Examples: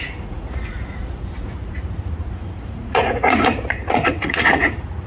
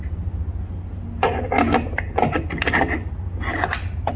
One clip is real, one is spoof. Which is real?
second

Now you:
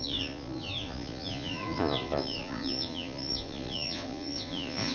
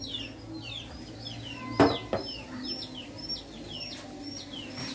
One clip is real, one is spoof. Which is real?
second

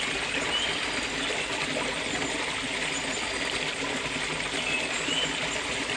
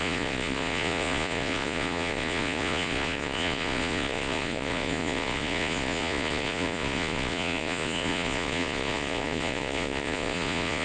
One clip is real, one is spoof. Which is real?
first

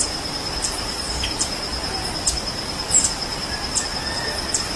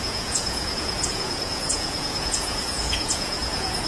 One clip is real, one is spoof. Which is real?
first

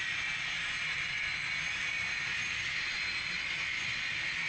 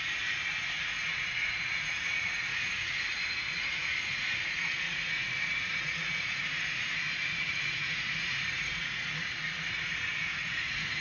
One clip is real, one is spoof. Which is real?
first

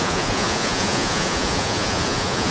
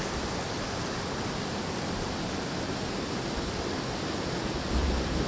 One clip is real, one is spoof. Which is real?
second